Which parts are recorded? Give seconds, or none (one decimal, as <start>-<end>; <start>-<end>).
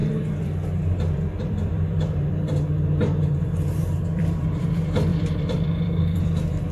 none